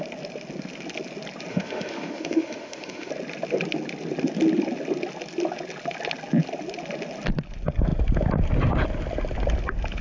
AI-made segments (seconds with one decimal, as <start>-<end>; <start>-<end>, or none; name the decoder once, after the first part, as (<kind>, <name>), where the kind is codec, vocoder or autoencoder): 1.5-3.1 (autoencoder, DAC-VAE)